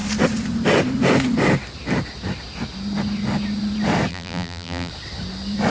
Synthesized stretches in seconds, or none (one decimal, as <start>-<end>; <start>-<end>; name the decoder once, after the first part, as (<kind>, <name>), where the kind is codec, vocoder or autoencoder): 4.1-4.9 (vocoder, BigVGAN v2)